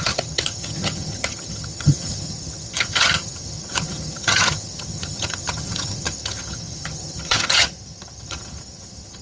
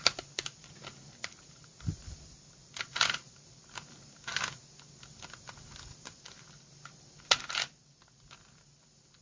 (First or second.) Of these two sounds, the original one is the second